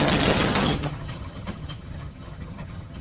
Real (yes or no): no